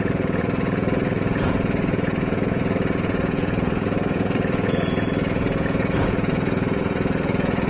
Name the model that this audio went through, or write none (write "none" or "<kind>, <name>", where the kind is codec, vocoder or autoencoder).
vocoder, Vocos